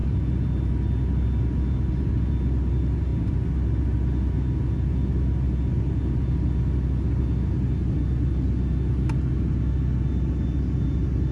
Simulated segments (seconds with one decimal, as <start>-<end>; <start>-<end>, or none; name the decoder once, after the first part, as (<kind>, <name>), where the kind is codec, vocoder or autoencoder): none